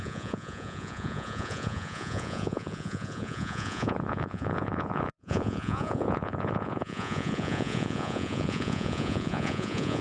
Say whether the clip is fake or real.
fake